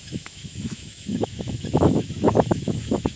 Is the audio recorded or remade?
remade